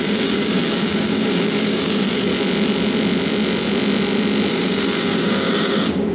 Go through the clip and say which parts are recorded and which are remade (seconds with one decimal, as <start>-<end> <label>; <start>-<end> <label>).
0.0-2.3 remade; 2.3-4.5 recorded; 4.5-6.1 remade

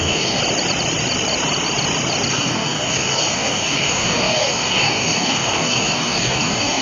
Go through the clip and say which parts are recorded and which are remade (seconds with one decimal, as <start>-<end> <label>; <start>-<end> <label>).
0.0-0.4 remade; 0.4-2.3 recorded; 2.3-6.8 remade